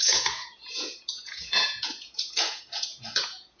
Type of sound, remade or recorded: remade